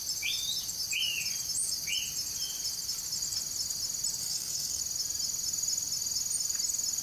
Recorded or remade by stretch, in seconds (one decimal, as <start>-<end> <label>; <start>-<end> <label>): 0.0-4.2 recorded; 4.2-4.8 remade; 4.8-7.0 recorded

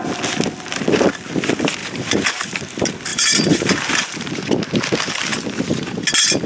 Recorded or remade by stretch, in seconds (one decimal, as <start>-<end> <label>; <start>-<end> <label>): 0.0-1.8 recorded; 1.8-2.6 remade; 2.6-3.1 recorded; 3.1-3.8 remade; 3.8-6.5 recorded

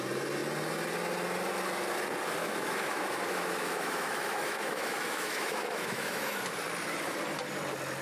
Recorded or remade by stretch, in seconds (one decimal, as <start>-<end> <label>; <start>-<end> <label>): 0.0-2.4 recorded; 2.4-6.4 remade; 6.4-8.0 recorded